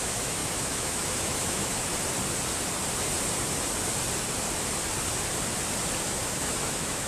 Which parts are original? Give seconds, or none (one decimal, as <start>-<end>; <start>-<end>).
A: 1.9-6.0

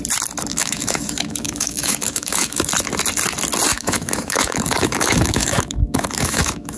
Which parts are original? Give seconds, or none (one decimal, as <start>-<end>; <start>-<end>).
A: 0.0-0.5; 2.7-3.7